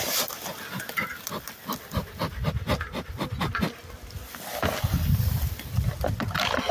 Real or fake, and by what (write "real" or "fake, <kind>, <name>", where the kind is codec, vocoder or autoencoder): real